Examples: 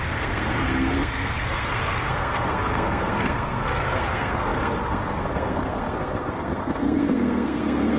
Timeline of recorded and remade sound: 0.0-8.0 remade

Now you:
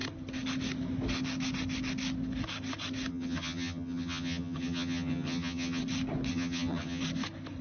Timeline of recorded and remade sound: 0.0-3.1 recorded; 3.1-5.8 remade; 5.8-6.3 recorded; 6.3-7.0 remade; 7.0-7.6 recorded

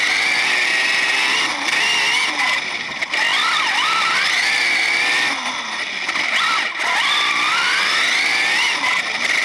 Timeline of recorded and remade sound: 0.0-9.4 recorded

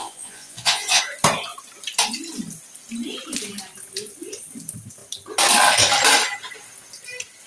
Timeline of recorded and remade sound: 0.0-1.0 remade; 1.0-7.5 recorded

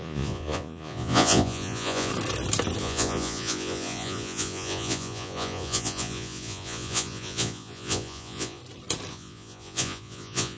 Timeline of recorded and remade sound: 0.0-2.1 remade; 2.1-2.8 recorded; 2.8-8.6 remade; 8.6-9.1 recorded; 9.1-10.6 remade

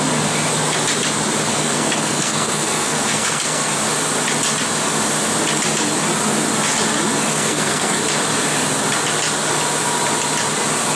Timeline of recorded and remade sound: 0.0-1.5 recorded; 1.5-3.7 remade; 3.7-7.3 recorded; 7.3-8.0 remade; 8.0-11.0 recorded